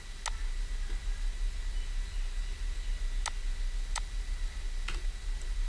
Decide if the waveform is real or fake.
real